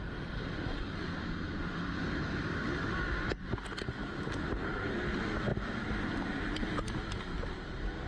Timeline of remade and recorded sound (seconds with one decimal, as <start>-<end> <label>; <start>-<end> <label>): 0.0-5.5 recorded; 5.5-8.1 remade